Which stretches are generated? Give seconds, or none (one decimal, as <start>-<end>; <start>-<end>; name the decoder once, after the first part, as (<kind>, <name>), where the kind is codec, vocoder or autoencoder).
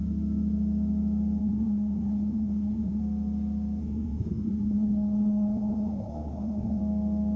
1.4-3.0 (codec, SNAC); 3.8-6.8